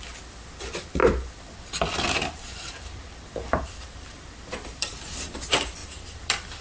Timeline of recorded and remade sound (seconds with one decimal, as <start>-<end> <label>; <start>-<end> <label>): 0.0-1.0 recorded; 1.0-5.0 remade; 5.0-5.8 recorded; 5.8-6.6 remade